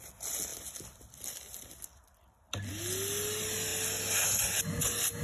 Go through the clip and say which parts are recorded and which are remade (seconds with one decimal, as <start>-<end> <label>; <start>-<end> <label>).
0.0-5.2 recorded